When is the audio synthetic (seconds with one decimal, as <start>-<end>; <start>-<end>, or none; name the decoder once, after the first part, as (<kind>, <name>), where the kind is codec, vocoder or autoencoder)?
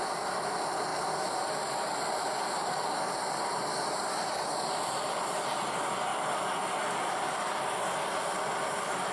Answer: none